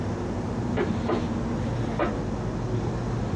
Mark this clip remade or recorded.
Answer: recorded